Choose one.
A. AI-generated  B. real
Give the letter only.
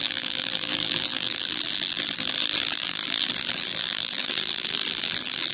A